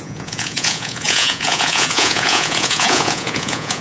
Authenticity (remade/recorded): remade